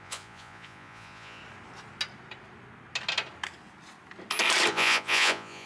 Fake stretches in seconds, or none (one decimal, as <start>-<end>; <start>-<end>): 0.0-1.4; 4.7-5.7